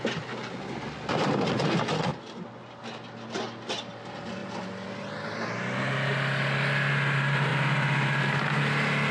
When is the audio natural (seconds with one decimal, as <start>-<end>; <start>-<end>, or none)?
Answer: 0.0-9.1